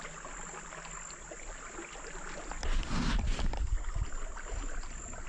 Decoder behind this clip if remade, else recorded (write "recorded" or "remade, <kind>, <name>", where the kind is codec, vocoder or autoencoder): recorded